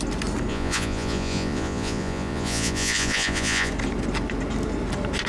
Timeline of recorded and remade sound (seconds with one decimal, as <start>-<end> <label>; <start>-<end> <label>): 0.0-0.5 recorded; 0.5-3.7 remade; 3.7-5.3 recorded